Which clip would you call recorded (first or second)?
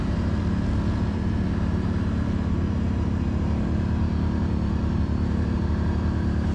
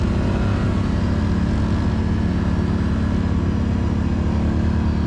second